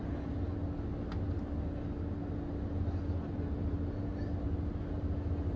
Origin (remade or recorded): recorded